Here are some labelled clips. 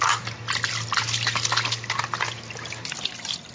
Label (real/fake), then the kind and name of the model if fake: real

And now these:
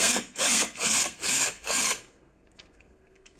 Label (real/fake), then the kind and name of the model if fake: fake, codec, SNAC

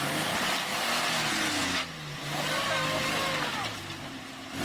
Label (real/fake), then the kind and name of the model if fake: real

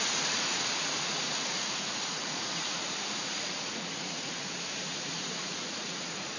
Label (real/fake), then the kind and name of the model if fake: fake, vocoder, Vocos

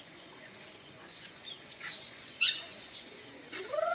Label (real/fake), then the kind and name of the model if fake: fake, vocoder, Vocos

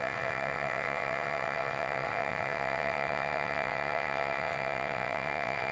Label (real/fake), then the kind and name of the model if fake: fake, vocoder, WaveNeXt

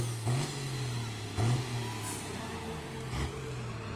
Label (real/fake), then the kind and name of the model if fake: real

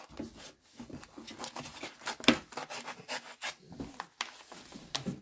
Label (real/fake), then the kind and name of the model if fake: real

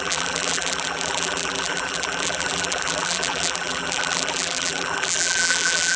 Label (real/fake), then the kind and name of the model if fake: fake, vocoder, BigVGAN v2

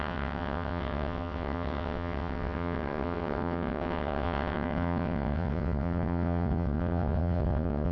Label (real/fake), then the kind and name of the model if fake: fake, vocoder, WaveNeXt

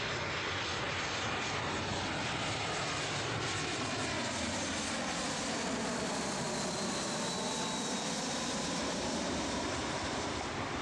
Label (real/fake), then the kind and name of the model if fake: real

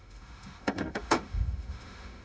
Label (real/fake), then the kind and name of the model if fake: fake, autoencoder, DAC-VAE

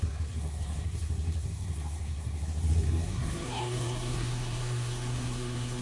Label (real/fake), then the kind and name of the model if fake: fake, codec, SNAC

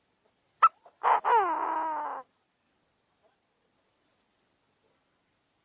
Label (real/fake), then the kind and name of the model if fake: real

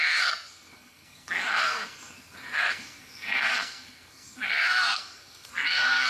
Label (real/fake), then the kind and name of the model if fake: fake, codec, SNAC